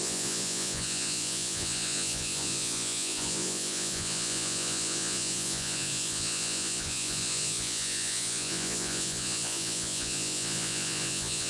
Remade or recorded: remade